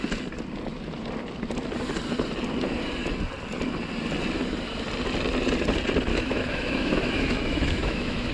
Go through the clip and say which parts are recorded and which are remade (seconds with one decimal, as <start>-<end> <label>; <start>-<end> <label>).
0.0-6.1 recorded; 6.1-8.3 remade